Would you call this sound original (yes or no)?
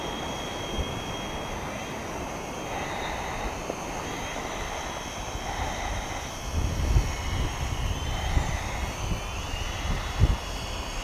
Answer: yes